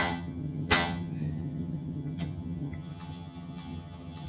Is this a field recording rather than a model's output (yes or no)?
no